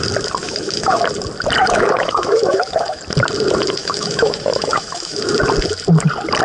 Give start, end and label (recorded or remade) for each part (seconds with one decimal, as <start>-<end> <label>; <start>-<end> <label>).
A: 0.0-0.4 recorded; 0.4-1.0 remade; 1.0-1.6 recorded; 1.6-3.0 remade; 3.0-3.8 recorded; 3.8-5.3 remade; 5.3-6.4 recorded